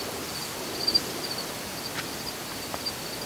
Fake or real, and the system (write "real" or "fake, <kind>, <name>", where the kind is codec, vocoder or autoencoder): real